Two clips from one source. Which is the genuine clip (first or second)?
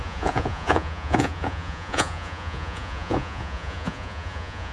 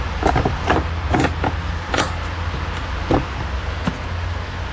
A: second